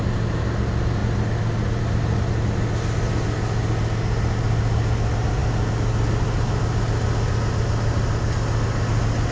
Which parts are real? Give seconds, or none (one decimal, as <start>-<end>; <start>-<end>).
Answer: 0.0-9.3